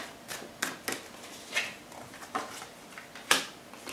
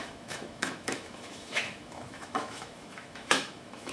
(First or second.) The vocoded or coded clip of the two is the second